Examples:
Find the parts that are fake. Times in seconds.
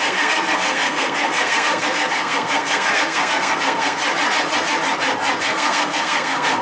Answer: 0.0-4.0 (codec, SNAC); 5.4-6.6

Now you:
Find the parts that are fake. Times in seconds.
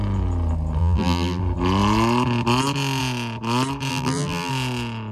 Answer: 0.8-1.4 (vocoder, BigVGAN v2); 3.9-4.5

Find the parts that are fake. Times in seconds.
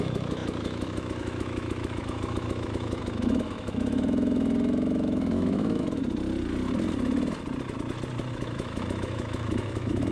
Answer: 0.0-6.0 (autoencoder, DAC-VAE); 8.3-10.1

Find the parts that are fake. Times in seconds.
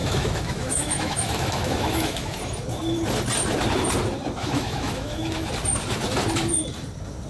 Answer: 0.0-2.4 (autoencoder, DAC-VAE); 4.4-5.5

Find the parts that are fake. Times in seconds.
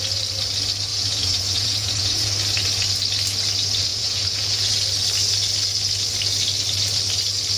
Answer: 0.9-2.3 (vocoder, Vocos); 3.9-4.7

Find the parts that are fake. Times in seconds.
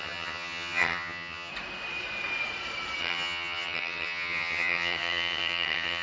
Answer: 0.0-1.5 (vocoder, HiFi-GAN); 3.0-6.0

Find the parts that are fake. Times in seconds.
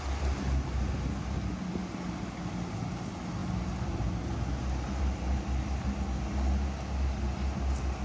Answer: none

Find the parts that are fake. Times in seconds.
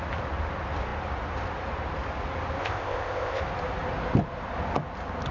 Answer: 2.6-3.4 (codec, ZipCodec)